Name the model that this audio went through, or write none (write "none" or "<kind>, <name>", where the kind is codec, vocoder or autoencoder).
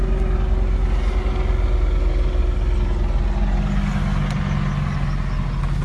none